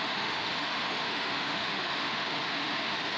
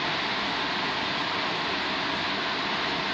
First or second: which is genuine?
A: second